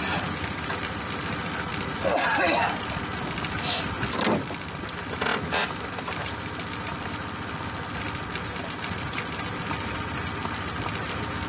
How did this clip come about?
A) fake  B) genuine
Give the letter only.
B